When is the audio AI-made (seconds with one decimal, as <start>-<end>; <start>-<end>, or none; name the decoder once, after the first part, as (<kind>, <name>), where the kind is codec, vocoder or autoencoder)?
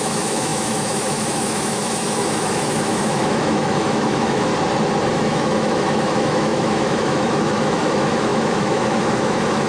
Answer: 0.0-4.5 (autoencoder, DAC-VAE); 5.1-9.7